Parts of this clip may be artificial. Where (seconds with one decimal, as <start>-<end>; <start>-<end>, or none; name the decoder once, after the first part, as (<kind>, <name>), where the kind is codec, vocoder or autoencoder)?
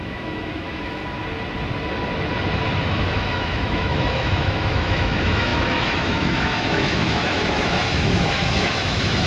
0.0-1.0 (autoencoder, DAC-VAE); 2.8-9.3